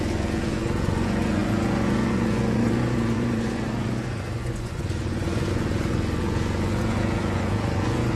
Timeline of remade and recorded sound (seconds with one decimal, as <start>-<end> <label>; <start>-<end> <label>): 0.0-8.2 remade